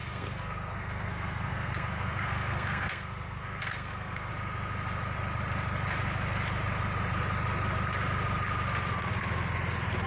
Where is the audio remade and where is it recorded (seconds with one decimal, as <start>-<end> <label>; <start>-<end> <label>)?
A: 0.0-4.3 remade; 4.3-10.1 recorded